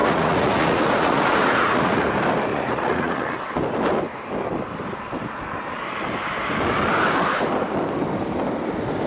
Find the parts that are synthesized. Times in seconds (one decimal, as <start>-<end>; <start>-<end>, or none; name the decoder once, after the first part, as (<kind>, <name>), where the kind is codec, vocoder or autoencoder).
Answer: 0.0-2.1 (vocoder, Vocos); 2.5-3.4